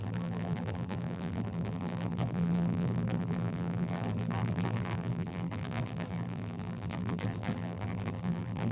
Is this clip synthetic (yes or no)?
yes